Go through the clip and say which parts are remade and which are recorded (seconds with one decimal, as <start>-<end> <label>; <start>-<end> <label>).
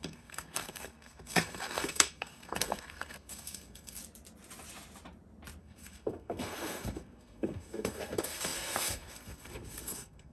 0.0-4.0 remade; 4.0-5.6 recorded; 5.6-10.3 remade